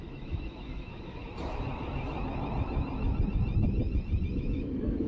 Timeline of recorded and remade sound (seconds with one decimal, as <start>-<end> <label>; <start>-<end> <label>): 0.0-1.2 remade; 1.2-4.3 recorded; 4.3-5.1 remade